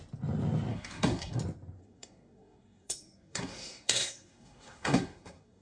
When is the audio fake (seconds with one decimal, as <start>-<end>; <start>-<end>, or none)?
0.7-1.4; 1.8-5.6